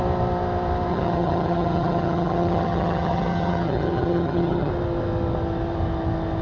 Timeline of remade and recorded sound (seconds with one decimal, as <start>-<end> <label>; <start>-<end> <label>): 0.0-0.9 recorded; 0.9-4.7 remade; 4.7-6.4 recorded